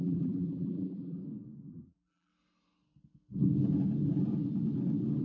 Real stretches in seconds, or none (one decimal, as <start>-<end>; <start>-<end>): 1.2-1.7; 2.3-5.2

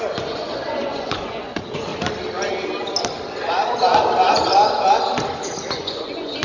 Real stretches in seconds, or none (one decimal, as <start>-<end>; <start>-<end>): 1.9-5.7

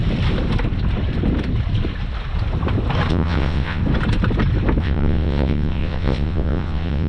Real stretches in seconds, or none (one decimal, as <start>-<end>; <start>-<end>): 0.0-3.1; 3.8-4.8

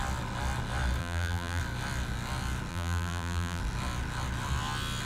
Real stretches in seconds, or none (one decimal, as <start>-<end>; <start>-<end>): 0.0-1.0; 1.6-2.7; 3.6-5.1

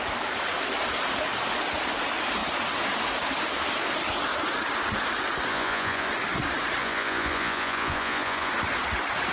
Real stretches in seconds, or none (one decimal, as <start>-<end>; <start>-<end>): 0.0-5.5; 6.1-6.8; 8.5-9.3

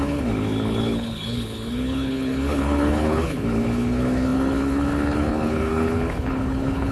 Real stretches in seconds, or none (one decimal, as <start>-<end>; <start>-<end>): none

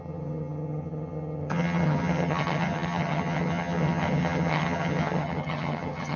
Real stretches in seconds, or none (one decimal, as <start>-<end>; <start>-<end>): none